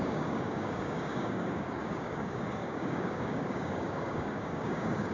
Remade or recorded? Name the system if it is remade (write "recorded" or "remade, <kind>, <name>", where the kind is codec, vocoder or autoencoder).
remade, codec, DAC